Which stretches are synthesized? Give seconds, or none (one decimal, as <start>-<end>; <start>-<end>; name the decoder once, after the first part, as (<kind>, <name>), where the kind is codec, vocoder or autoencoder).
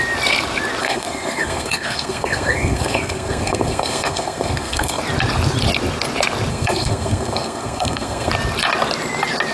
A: 0.8-5.0 (codec, SNAC); 6.5-8.3